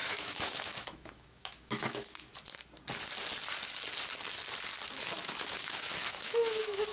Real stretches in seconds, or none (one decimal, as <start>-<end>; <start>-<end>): 2.3-5.0